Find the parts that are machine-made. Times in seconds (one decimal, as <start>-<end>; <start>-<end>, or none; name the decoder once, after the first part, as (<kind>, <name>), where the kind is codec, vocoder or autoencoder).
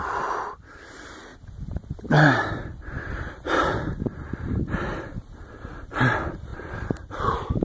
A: 0.0-7.6 (vocoder, BigVGAN v2)